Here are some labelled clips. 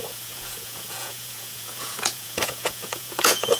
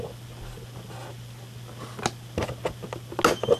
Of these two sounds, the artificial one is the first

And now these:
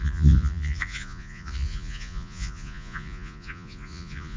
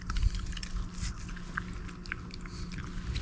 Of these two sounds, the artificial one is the first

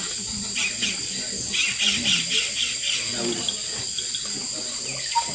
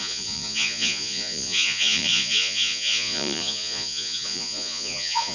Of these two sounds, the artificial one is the second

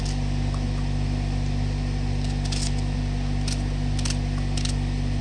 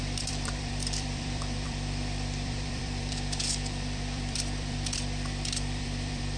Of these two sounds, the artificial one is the second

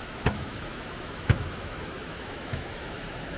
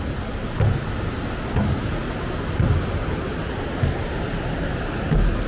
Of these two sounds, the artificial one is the first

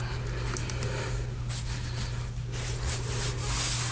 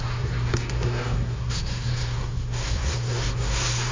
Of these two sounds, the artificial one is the second